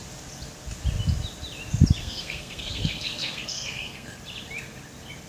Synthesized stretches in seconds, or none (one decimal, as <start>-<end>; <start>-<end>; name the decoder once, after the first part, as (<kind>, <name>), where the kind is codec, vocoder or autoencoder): 2.0-4.1 (codec, SNAC)